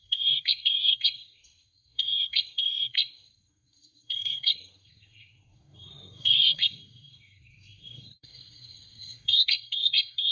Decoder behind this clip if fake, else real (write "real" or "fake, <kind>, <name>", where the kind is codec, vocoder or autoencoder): fake, codec, SNAC